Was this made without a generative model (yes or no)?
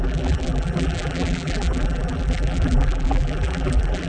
no